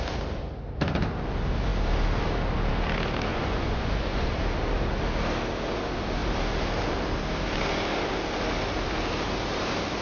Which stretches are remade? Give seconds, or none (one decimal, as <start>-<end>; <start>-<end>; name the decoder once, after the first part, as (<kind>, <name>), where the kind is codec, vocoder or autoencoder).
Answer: 3.3-4.3 (vocoder, Vocos)